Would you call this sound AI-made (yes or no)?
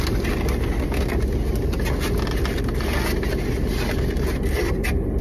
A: no